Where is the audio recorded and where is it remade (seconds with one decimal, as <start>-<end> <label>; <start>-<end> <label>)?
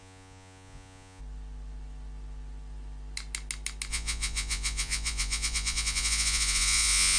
0.0-1.2 remade; 1.2-3.9 recorded; 3.9-7.2 remade